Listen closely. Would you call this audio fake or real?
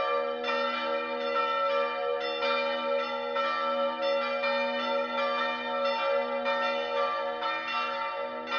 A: real